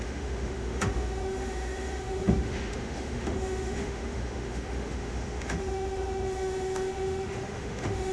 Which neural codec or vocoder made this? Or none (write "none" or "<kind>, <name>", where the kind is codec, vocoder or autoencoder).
autoencoder, DAC-VAE